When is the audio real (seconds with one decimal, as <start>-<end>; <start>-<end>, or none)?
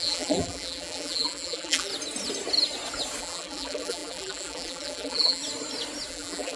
1.9-3.2; 5.4-6.1